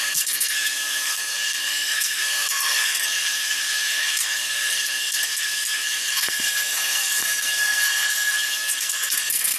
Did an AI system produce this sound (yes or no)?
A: yes